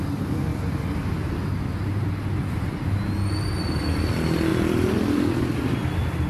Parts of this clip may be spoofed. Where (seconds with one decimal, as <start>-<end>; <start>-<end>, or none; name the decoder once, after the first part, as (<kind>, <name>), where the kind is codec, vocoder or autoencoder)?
none